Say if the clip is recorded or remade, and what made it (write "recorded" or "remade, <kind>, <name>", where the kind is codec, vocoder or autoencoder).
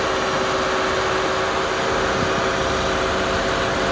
recorded